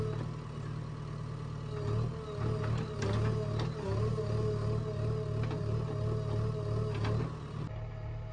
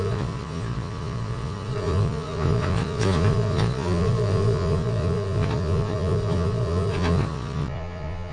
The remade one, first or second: second